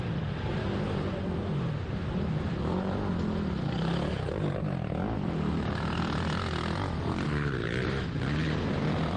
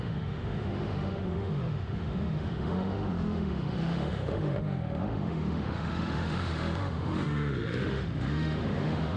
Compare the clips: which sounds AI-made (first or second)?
second